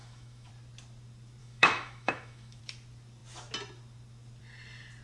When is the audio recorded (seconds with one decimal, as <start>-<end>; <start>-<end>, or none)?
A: 0.5-1.4; 2.6-5.0